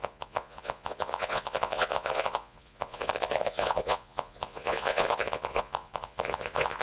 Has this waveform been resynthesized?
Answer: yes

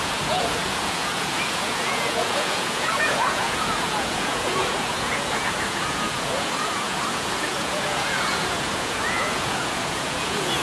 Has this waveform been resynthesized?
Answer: yes